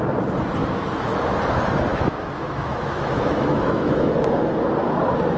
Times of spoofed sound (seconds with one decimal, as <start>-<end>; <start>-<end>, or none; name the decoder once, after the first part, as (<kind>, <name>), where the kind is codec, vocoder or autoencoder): 0.6-1.2 (autoencoder, DAC-VAE); 1.9-4.2